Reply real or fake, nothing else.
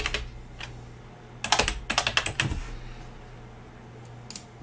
real